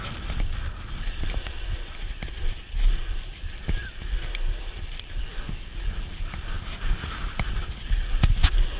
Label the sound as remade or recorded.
recorded